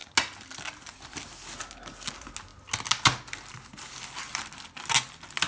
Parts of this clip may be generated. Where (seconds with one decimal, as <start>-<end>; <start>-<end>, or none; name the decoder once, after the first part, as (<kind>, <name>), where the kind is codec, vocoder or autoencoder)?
none